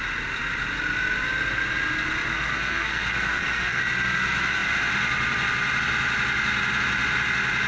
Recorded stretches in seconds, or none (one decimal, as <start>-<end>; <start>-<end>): 0.0-2.3; 3.8-7.7